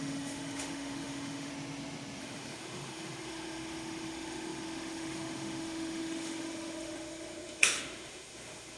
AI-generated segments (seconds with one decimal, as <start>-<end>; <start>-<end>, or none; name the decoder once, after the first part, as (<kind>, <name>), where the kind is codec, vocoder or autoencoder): 0.0-1.5 (autoencoder, DAC-VAE); 2.2-8.8